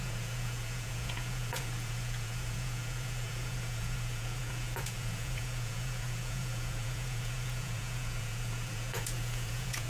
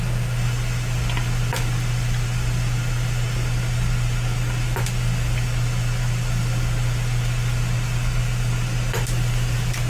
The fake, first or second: first